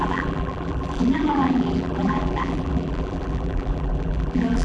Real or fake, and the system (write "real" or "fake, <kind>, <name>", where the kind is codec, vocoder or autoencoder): fake, vocoder, BigVGAN v2